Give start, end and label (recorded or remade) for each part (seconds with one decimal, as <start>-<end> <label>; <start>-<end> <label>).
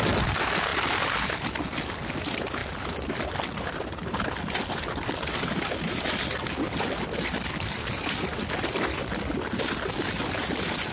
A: 0.0-0.7 remade; 0.7-1.9 recorded; 1.9-8.3 remade; 8.3-10.1 recorded; 10.1-10.9 remade